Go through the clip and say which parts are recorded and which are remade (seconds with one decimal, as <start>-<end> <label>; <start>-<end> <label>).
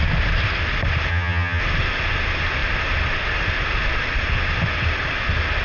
0.0-1.1 recorded; 1.1-1.6 remade; 1.6-5.6 recorded